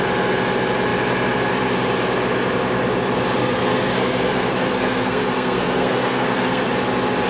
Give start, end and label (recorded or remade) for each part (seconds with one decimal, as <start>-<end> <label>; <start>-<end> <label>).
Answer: 0.0-3.4 recorded; 3.4-6.7 remade; 6.7-7.3 recorded

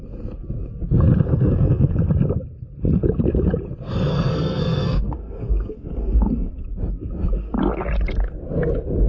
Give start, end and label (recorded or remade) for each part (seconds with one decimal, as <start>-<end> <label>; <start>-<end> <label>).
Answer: 0.0-1.3 recorded; 1.3-1.9 remade; 1.9-4.1 recorded; 4.1-6.5 remade; 6.5-9.1 recorded

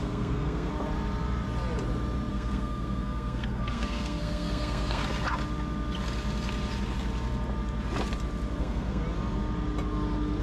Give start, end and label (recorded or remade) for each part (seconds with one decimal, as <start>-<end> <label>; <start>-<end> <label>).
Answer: 0.0-0.7 remade; 0.7-2.3 recorded; 2.3-5.0 remade; 5.0-8.6 recorded; 8.6-9.0 remade; 9.0-10.4 recorded

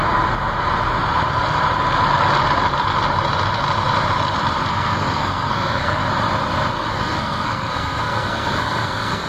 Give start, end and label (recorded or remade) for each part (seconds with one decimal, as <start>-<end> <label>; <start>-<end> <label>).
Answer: 0.0-4.7 recorded; 4.7-6.0 remade; 6.0-6.7 recorded; 6.7-9.3 remade

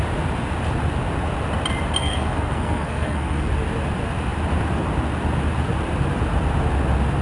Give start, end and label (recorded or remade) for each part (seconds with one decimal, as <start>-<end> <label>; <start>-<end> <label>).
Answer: 0.0-2.0 recorded; 2.0-3.5 remade; 3.5-7.2 recorded

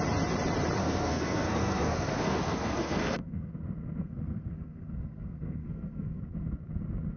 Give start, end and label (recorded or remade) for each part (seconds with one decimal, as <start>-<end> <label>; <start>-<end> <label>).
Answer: 0.0-0.8 recorded; 0.8-3.5 remade; 3.5-4.0 recorded; 4.0-6.2 remade; 6.2-7.2 recorded

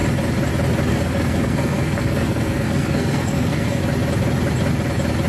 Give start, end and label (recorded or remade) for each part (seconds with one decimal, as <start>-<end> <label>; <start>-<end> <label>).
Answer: 0.0-0.9 recorded; 0.9-3.8 remade; 3.8-5.3 recorded